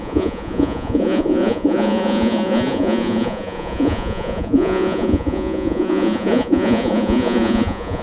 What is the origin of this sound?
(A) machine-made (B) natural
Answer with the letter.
A